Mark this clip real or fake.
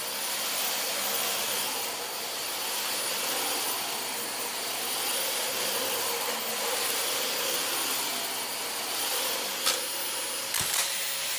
real